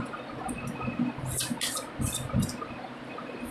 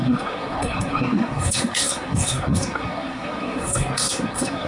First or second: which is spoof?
second